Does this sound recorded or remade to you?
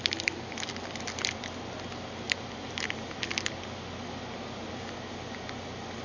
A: recorded